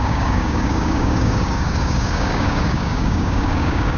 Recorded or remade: remade